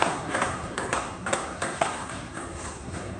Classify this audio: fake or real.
fake